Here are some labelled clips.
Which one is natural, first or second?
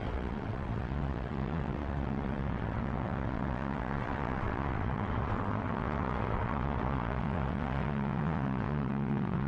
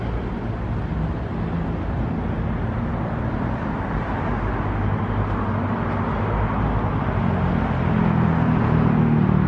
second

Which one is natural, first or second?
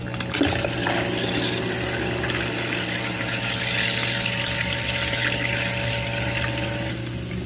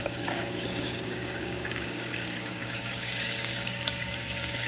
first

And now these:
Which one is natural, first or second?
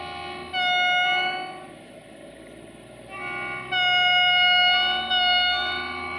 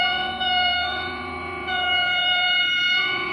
first